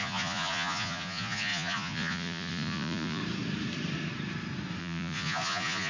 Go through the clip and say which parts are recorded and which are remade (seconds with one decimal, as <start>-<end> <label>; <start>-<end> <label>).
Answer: 0.0-3.2 remade; 3.2-4.8 recorded; 4.8-5.9 remade